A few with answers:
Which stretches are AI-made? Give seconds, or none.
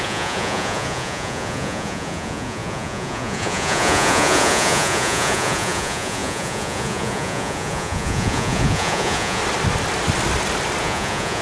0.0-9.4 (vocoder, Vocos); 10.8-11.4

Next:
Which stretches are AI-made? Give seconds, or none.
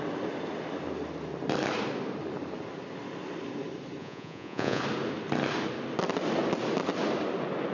4.0-4.8 (vocoder, Vocos)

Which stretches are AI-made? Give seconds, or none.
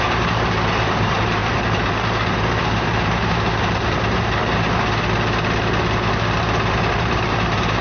0.0-4.4 (vocoder, BigVGAN v2); 6.9-7.8